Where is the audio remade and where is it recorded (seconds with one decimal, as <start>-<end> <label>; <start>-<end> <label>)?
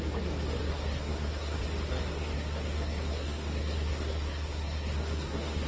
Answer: 0.0-0.6 recorded; 0.6-1.6 remade; 1.6-2.1 recorded; 2.1-5.7 remade